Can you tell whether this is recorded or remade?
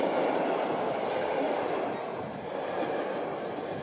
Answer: recorded